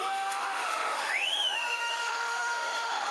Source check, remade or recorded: remade